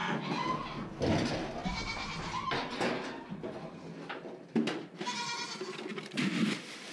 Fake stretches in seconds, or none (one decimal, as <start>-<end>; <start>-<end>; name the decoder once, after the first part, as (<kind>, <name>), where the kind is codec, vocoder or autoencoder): 5.9-6.9 (vocoder, BigVGAN v2)